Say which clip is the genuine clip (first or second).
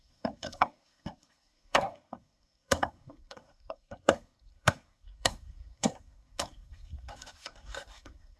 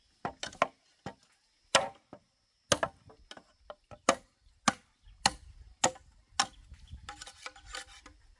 second